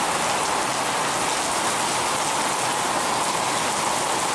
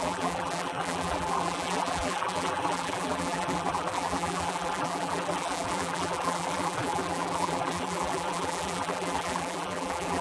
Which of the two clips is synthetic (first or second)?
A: second